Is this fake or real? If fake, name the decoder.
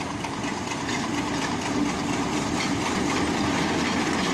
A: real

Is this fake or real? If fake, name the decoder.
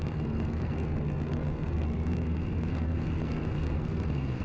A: fake, codec, SNAC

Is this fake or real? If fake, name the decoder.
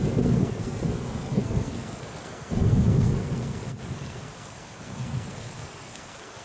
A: fake, codec, SNAC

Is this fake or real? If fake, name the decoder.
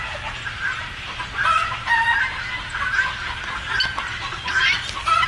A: real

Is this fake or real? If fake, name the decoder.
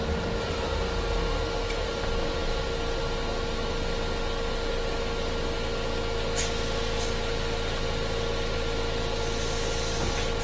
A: real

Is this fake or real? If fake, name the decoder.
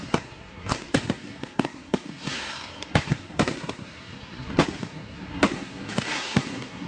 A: fake, codec, SNAC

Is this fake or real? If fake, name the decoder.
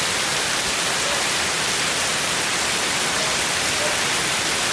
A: real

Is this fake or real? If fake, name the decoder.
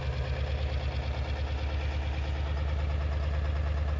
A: real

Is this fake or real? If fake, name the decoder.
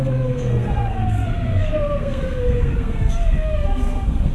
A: fake, codec, SNAC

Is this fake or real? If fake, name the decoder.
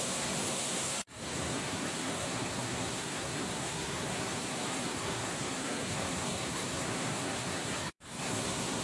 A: fake, codec, SNAC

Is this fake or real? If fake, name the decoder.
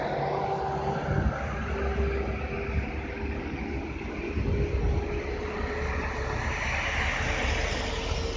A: real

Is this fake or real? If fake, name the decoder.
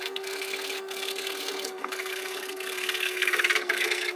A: fake, codec, SNAC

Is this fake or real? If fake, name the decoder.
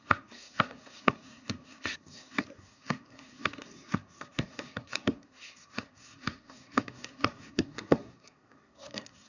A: fake, codec, SNAC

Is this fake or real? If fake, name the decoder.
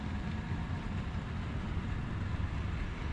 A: real